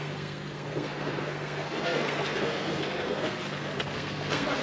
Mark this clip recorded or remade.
remade